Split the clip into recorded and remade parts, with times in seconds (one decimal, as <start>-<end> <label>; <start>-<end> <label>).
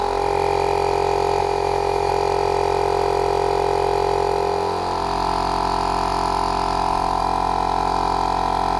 0.0-1.4 recorded; 1.4-2.1 remade; 2.1-8.8 recorded